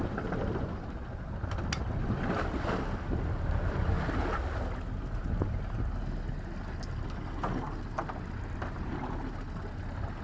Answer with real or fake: real